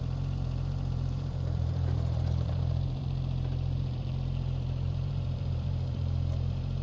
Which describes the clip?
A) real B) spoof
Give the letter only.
B